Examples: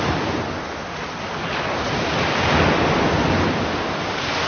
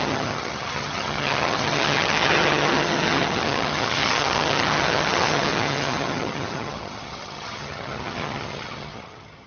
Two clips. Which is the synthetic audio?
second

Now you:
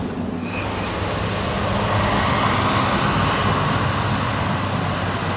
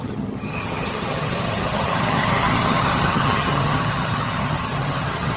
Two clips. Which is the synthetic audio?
second